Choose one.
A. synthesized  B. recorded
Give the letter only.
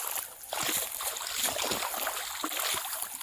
B